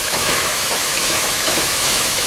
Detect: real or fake fake